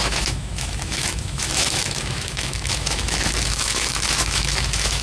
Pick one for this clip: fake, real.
fake